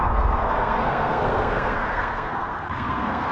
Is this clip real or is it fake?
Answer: fake